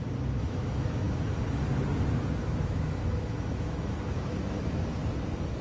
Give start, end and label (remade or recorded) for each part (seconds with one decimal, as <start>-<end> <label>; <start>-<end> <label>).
0.0-0.4 recorded; 0.4-1.2 remade; 1.2-2.4 recorded; 2.4-4.6 remade; 4.6-5.6 recorded